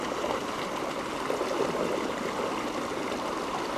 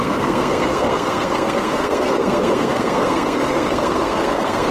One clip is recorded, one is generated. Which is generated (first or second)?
second